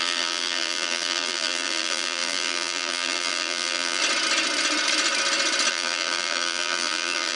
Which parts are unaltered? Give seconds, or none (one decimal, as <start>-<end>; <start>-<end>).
4.0-5.7